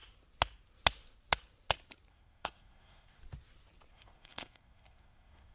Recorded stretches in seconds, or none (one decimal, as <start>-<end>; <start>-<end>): 0.0-2.1; 3.2-3.9